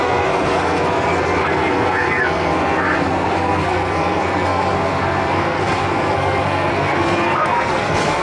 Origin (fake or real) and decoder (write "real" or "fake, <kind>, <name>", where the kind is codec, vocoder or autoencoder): fake, codec, SNAC